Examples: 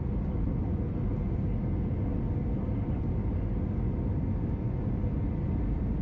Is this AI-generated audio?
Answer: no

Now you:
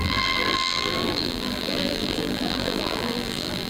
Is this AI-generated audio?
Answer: yes